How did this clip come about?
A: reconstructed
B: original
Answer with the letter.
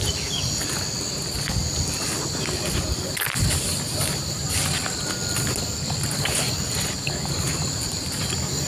B